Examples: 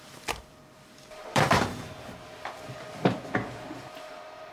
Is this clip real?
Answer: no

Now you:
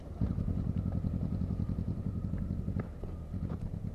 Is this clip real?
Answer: no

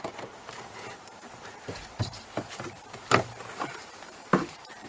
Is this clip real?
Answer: no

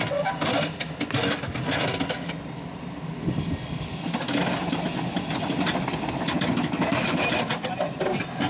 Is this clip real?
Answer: yes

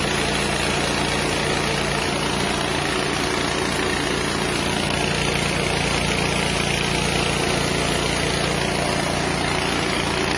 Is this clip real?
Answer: yes